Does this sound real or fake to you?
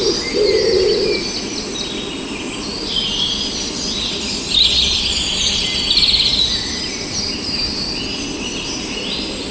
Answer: real